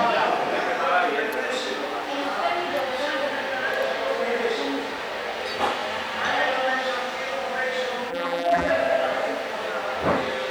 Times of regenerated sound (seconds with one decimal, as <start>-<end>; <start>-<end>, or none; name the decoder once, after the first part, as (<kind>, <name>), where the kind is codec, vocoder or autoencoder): 8.1-8.7 (vocoder, BigVGAN v2)